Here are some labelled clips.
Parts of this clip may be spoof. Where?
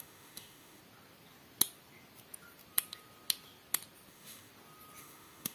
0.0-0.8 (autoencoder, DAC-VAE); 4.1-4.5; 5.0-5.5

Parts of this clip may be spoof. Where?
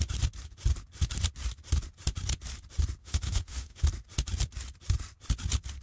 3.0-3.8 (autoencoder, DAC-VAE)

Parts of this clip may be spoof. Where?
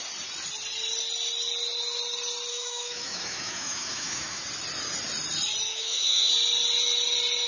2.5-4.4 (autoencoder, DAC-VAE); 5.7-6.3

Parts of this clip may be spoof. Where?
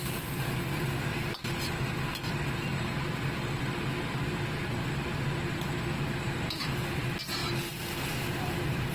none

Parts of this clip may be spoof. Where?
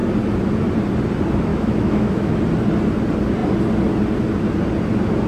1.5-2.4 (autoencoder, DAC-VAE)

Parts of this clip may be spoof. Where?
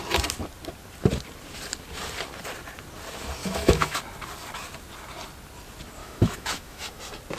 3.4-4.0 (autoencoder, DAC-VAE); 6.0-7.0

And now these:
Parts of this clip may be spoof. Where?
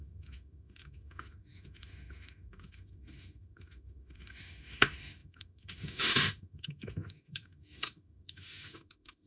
0.0-9.3 (autoencoder, DAC-VAE)